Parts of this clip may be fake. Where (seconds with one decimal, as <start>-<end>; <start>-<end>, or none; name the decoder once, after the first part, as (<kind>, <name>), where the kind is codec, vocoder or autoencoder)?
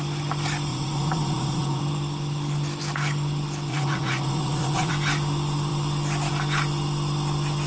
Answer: 0.7-1.8 (vocoder, Vocos); 3.7-4.9